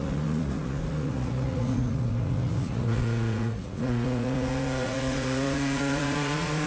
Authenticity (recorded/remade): remade